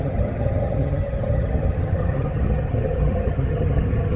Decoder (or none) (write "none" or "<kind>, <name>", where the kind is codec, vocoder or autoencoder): vocoder, HiFi-GAN